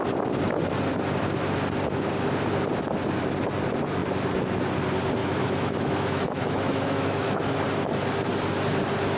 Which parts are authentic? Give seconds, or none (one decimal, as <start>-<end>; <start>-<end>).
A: 0.0-5.2; 7.4-9.2